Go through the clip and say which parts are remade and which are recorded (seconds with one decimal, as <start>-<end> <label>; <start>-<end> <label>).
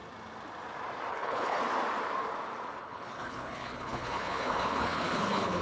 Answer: 0.0-1.1 recorded; 1.1-1.6 remade; 1.6-2.8 recorded; 2.8-5.6 remade